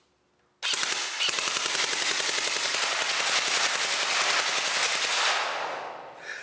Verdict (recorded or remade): recorded